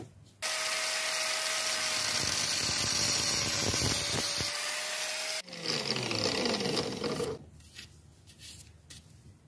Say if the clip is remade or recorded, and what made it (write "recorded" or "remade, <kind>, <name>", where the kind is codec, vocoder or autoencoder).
recorded